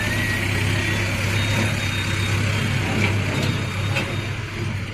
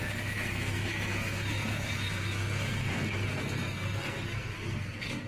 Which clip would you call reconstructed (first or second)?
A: second